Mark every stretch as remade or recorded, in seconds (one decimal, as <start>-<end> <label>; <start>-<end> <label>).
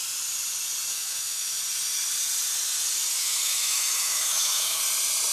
0.0-0.9 recorded; 0.9-1.6 remade; 1.6-3.2 recorded; 3.2-4.8 remade; 4.8-5.3 recorded